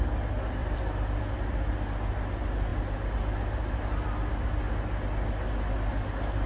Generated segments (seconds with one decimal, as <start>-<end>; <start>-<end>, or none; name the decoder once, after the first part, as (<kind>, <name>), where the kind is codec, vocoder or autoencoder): 0.6-1.2 (vocoder, BigVGAN v2)